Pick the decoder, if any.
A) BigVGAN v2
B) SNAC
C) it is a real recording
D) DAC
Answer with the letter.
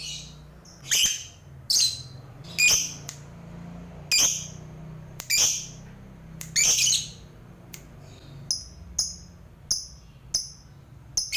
C